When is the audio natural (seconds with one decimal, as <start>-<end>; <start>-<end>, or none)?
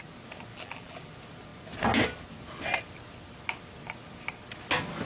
0.0-0.5; 1.1-5.1